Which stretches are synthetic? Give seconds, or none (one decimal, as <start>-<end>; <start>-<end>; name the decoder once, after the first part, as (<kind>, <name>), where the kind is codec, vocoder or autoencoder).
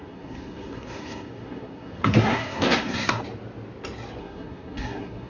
0.0-3.2 (codec, SNAC); 4.2-5.3